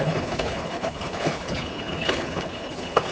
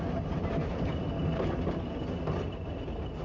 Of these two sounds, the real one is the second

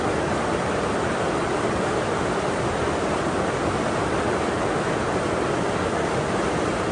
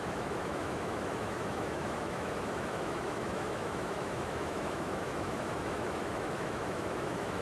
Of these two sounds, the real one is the first